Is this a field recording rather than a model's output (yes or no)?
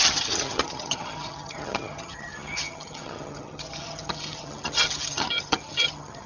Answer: no